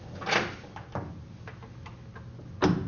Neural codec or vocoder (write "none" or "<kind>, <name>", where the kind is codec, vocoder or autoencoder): none